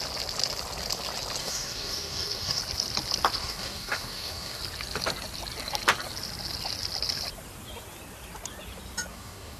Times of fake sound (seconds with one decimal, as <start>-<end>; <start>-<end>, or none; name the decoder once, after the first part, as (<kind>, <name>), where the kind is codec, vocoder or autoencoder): 1.4-2.6 (codec, DAC); 3.4-4.6; 9.1-9.6